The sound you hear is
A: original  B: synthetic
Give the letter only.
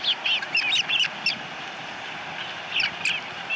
A